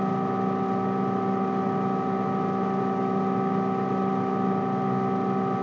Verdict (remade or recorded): recorded